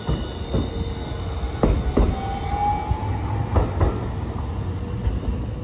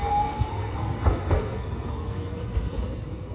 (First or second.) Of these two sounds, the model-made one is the second